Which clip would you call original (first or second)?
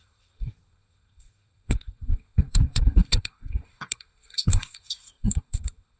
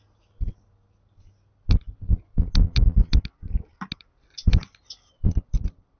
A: second